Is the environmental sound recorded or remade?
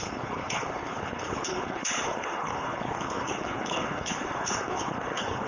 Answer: remade